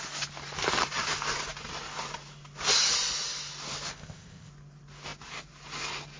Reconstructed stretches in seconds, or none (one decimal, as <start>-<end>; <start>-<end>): 3.9-4.5